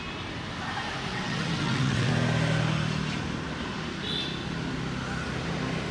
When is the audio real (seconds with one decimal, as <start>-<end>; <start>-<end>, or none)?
0.0-1.1; 2.1-5.9